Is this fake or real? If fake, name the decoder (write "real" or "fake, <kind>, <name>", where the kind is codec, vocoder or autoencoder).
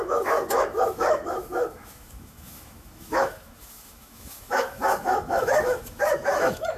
fake, autoencoder, DAC-VAE